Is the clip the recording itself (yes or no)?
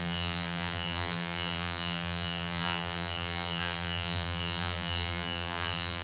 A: no